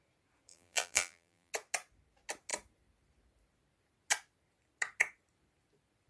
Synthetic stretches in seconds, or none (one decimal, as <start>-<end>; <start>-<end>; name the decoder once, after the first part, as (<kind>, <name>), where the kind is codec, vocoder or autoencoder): 0.5-1.5 (vocoder, BigVGAN v2)